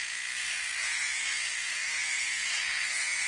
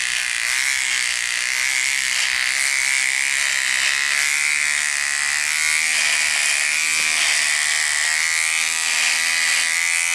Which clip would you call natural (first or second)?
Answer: second